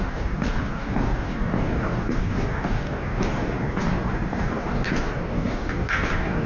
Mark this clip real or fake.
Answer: fake